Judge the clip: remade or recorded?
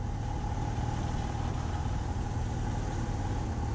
recorded